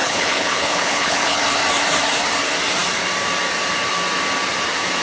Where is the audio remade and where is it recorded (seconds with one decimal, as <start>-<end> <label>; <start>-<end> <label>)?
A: 0.0-1.4 remade; 1.4-5.0 recorded